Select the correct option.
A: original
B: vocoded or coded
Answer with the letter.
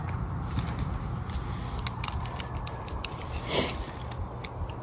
A